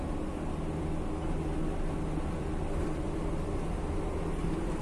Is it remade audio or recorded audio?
recorded